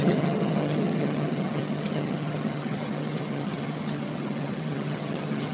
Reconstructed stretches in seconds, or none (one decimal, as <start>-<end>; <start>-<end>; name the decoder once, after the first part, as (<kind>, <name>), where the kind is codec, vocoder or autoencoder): 0.0-5.5 (vocoder, HiFi-GAN)